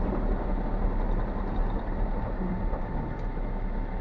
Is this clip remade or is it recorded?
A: recorded